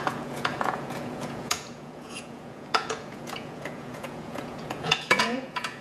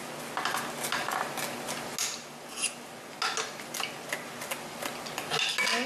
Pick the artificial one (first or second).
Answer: first